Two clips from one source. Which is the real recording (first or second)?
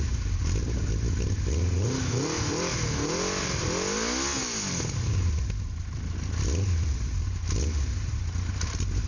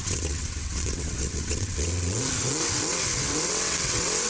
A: first